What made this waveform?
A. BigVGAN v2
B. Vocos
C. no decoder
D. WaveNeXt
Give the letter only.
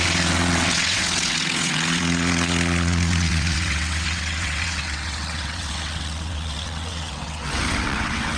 D